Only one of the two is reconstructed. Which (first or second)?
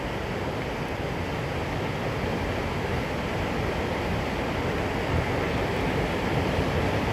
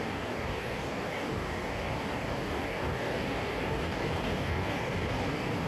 second